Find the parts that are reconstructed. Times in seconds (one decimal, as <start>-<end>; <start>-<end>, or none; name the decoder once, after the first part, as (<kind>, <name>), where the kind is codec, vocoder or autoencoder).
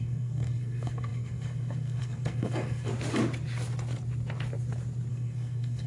0.0-2.9 (codec, SNAC); 5.1-5.9